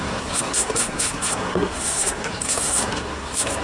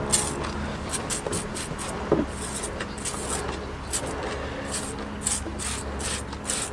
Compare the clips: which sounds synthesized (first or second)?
first